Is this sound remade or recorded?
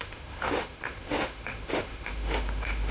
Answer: remade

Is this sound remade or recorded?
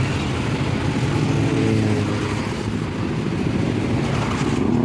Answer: recorded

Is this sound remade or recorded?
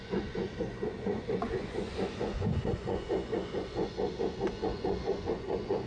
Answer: remade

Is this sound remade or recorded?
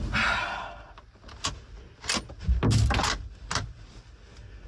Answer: recorded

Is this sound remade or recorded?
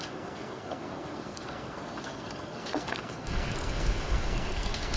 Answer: remade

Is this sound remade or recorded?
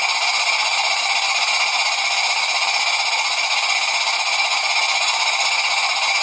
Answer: recorded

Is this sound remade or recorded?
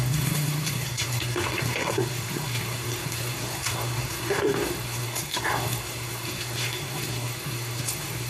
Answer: remade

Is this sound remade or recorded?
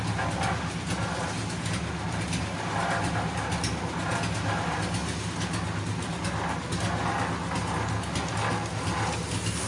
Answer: recorded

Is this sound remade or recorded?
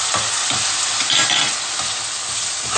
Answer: recorded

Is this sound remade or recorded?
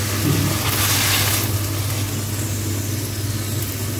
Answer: recorded